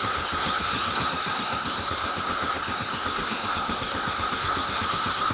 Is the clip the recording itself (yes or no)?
no